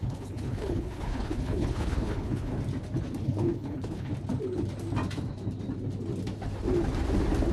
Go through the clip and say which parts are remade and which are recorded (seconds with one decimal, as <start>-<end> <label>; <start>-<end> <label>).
0.0-2.5 remade; 2.5-3.2 recorded; 3.2-4.1 remade; 4.1-7.5 recorded